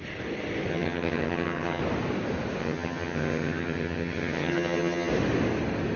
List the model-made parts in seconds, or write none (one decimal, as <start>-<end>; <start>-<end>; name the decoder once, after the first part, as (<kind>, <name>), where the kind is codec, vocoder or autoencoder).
0.7-1.8 (vocoder, HiFi-GAN); 2.6-5.1